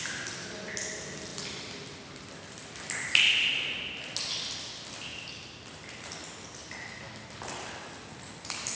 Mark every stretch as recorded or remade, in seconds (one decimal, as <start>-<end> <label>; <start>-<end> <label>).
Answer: 0.0-8.7 recorded